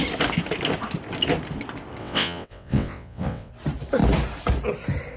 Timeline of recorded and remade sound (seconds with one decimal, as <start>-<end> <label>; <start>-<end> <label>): 0.0-2.0 recorded; 2.0-3.5 remade; 3.5-5.2 recorded